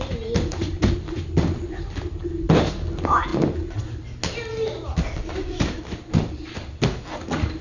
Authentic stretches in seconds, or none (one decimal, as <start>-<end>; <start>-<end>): 0.0-7.6